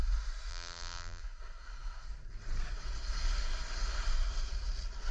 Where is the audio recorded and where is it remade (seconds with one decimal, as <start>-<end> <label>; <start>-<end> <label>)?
0.0-0.5 recorded; 0.5-1.2 remade; 1.2-5.1 recorded